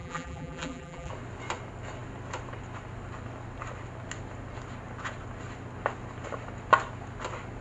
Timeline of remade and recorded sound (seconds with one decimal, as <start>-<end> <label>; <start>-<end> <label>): 0.0-1.1 remade; 1.1-7.6 recorded